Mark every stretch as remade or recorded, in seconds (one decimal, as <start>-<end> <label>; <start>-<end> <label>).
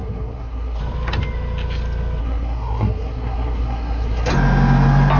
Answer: 0.0-0.8 remade; 0.8-2.2 recorded; 2.2-4.3 remade; 4.3-5.2 recorded